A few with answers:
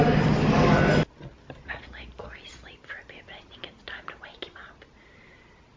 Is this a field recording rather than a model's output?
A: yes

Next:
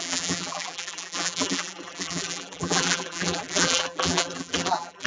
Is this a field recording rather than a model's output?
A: no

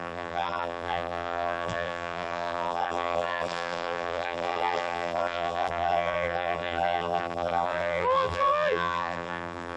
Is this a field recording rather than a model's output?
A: no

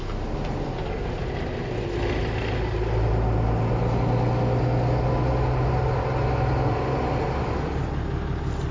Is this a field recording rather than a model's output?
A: yes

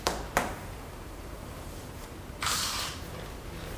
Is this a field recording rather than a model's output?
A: no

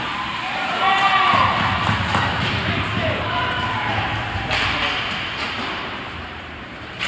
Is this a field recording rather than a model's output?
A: no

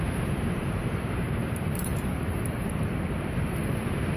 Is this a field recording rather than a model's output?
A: no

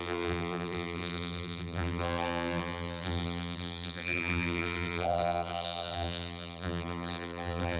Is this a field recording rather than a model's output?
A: no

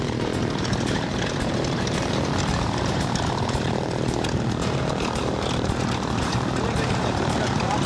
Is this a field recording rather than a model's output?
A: no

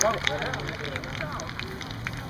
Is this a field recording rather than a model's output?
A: no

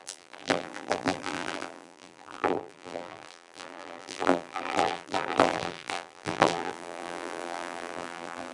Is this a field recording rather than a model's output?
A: no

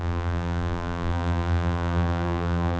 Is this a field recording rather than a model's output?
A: no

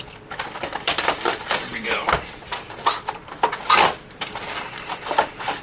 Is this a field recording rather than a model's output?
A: no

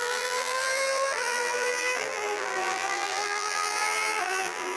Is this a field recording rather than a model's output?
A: no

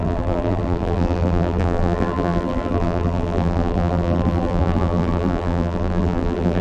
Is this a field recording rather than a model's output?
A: no